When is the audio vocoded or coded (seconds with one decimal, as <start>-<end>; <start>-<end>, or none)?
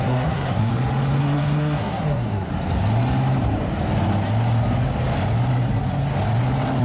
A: 0.0-0.7; 1.2-2.5